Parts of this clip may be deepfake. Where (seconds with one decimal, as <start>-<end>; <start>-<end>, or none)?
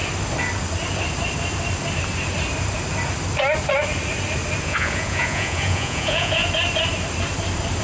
4.6-6.4